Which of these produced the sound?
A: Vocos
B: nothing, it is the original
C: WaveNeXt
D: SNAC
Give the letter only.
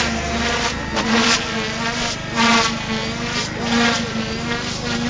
B